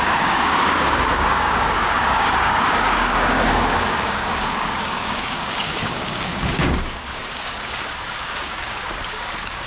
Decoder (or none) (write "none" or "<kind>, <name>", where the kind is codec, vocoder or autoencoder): codec, DAC